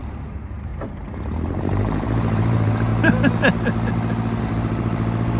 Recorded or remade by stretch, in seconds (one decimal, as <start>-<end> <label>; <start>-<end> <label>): 0.0-0.7 remade; 0.7-1.6 recorded; 1.6-2.9 remade; 2.9-4.4 recorded; 4.4-5.4 remade